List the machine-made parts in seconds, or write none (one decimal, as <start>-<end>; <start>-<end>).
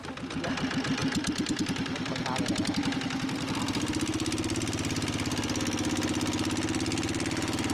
none